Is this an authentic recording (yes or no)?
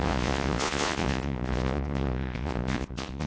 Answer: no